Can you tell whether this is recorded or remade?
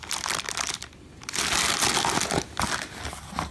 recorded